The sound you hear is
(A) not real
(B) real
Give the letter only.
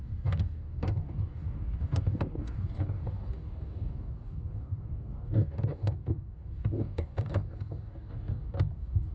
A